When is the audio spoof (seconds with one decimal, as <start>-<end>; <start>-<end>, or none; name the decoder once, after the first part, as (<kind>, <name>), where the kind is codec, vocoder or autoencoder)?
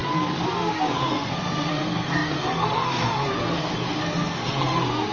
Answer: 0.7-5.1 (codec, SNAC)